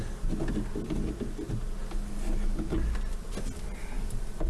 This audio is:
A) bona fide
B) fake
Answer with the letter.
A